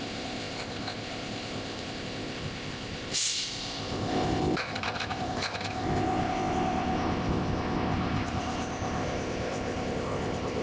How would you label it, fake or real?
fake